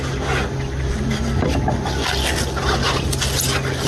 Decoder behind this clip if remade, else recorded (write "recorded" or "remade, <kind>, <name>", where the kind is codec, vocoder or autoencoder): recorded